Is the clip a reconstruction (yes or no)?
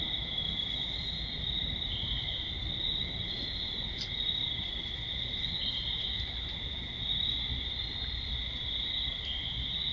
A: no